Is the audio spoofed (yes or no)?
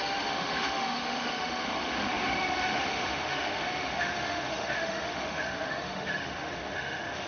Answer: yes